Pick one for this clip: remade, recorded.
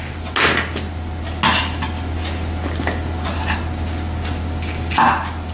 recorded